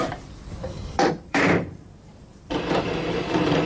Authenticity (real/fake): fake